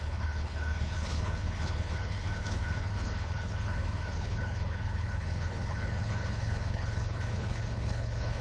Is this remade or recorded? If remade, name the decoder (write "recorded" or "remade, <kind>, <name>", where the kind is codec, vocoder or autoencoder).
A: remade, codec, HILCodec